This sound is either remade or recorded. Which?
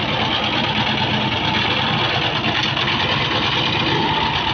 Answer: recorded